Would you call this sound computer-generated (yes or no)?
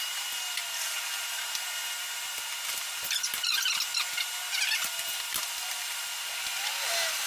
no